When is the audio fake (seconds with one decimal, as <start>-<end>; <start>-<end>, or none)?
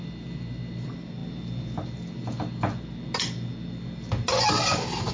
none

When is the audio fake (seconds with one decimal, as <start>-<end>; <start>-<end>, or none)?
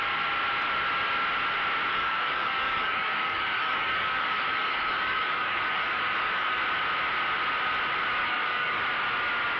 1.9-6.6; 8.2-8.8